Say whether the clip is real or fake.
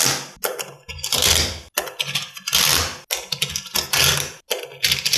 real